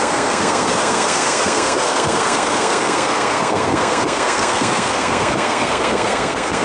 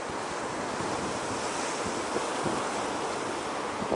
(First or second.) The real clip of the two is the second